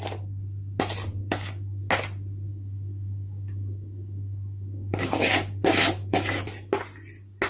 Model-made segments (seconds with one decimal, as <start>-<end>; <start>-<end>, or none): 1.2-1.8; 2.5-6.4

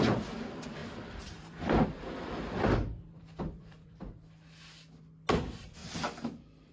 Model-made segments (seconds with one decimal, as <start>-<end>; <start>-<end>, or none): 0.8-4.0; 5.8-6.7

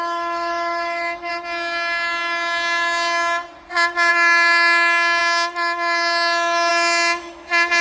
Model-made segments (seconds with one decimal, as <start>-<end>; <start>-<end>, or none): 0.0-1.3; 4.1-7.8

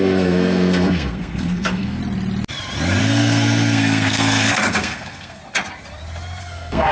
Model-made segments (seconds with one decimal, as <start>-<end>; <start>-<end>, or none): 0.0-2.0; 3.0-5.4; 6.4-6.9